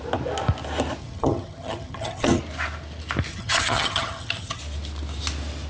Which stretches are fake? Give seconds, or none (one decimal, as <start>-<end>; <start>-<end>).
1.0-2.4; 3.3-4.6